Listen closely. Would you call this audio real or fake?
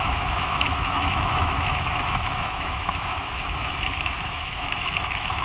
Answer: fake